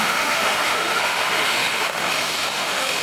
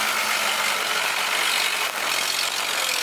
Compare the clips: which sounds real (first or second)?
second